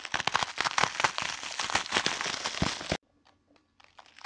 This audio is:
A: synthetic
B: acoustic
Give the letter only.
B